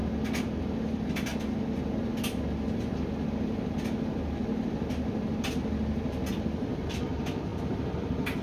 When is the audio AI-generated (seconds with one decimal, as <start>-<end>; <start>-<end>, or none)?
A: 0.6-1.3; 6.3-8.4